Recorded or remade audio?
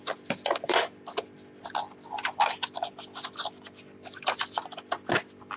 recorded